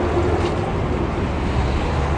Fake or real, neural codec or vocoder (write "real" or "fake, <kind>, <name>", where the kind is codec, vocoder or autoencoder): real